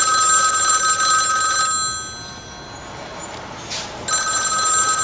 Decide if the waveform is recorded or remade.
recorded